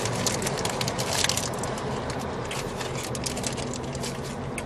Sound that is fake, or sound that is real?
real